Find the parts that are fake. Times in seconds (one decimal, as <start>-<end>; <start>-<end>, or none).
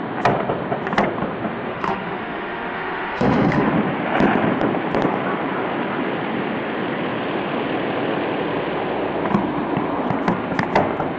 1.7-3.7